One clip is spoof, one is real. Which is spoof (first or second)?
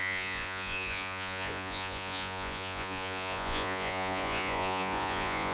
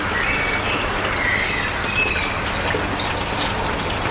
first